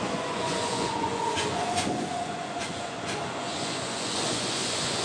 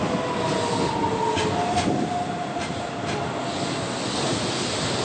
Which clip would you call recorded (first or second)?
second